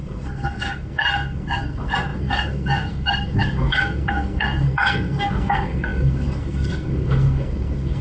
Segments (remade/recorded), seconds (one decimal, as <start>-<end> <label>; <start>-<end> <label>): 0.0-8.0 remade